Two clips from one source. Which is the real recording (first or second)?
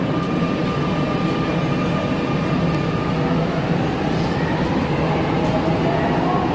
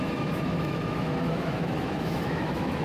first